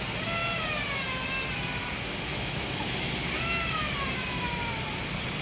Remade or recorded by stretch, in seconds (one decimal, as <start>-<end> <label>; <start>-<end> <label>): 0.0-2.3 recorded; 2.3-3.1 remade; 3.1-5.4 recorded